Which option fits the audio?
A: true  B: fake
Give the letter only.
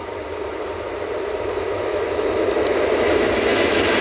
A